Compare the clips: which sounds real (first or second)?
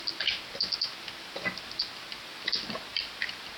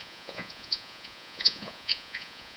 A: first